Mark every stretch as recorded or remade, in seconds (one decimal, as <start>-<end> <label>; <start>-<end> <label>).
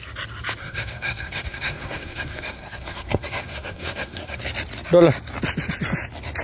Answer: 0.0-0.6 recorded; 0.6-4.4 remade; 4.4-6.4 recorded